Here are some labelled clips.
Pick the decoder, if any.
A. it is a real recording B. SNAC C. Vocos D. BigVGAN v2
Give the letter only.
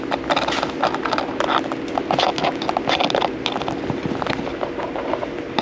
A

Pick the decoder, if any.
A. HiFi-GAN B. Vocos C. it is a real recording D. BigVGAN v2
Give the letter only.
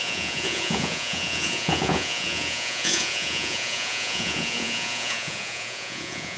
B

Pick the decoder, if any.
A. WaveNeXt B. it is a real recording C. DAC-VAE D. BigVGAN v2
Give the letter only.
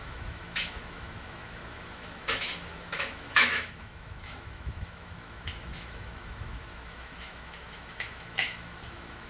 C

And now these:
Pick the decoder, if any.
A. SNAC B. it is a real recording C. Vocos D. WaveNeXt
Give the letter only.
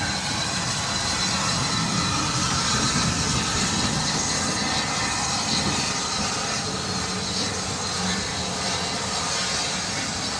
B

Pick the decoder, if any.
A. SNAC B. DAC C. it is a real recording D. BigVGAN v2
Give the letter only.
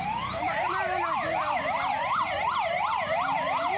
C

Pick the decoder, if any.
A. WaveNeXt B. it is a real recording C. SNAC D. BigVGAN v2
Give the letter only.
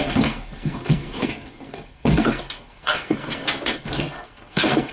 C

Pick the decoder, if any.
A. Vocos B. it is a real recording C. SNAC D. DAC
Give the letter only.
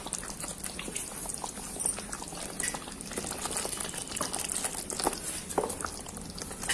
B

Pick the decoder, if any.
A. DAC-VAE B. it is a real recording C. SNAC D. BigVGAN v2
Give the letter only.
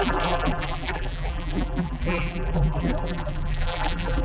D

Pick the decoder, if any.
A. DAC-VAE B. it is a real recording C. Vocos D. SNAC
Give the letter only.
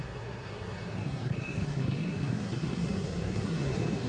D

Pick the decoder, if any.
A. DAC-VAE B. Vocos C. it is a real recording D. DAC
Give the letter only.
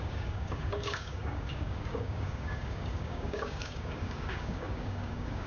D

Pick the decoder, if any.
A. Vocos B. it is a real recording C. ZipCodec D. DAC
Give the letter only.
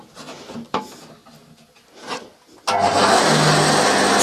B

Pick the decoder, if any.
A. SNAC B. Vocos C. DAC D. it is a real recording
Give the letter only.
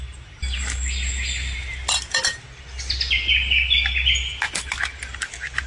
D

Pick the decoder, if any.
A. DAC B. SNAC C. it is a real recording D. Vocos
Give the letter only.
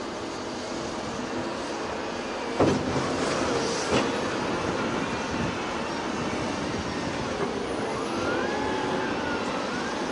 C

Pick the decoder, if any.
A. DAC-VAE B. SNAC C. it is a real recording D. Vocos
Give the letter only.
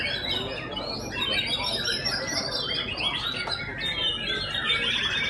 C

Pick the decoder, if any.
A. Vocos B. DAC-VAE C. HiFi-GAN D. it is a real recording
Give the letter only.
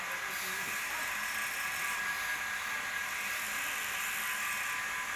D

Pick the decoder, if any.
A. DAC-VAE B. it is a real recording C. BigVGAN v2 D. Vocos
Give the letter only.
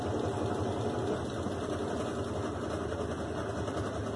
B